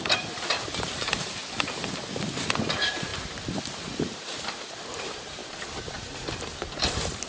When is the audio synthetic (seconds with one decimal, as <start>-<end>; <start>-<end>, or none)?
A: 0.0-1.4; 2.6-5.4; 6.8-7.3